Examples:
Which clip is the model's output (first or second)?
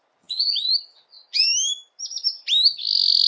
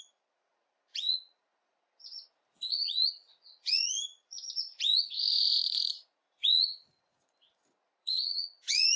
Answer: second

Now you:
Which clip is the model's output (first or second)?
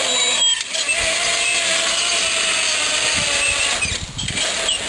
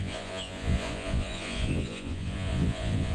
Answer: second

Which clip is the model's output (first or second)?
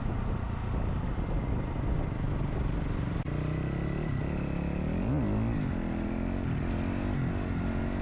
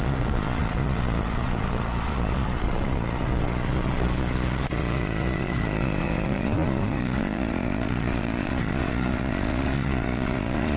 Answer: second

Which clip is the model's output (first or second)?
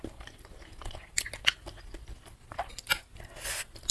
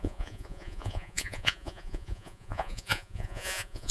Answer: second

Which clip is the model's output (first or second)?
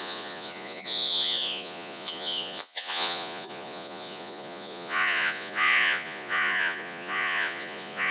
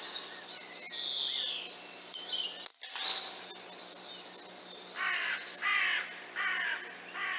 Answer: first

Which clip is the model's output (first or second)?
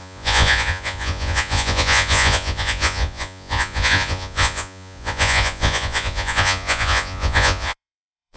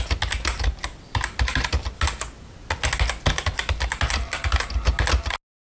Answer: first